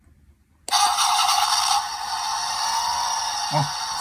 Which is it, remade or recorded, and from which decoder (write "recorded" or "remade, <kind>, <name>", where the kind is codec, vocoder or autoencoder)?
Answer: recorded